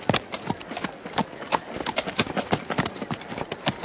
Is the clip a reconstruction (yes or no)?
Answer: no